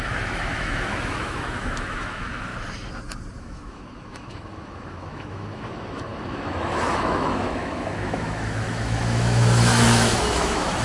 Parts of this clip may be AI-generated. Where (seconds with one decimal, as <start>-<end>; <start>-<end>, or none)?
0.0-2.5; 3.4-10.8

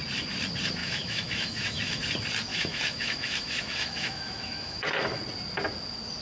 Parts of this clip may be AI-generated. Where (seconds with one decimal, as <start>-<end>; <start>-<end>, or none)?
0.8-2.0; 2.5-5.2

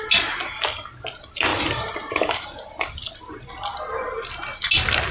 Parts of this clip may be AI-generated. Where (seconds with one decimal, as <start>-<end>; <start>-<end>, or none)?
none